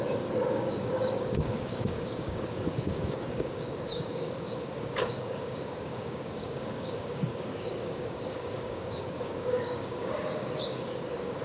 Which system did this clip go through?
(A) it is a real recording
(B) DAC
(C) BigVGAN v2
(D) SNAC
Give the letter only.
B